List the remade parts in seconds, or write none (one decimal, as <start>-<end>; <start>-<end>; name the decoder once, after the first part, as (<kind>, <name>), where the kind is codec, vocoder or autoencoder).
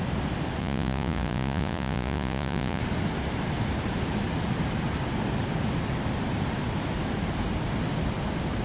0.6-2.8 (vocoder, Vocos)